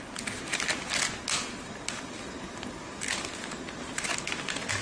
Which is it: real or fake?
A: real